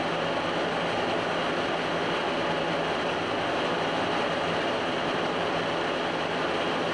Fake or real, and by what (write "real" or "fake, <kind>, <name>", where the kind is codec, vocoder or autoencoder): real